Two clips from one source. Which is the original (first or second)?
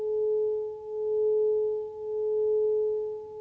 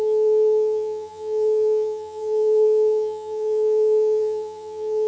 first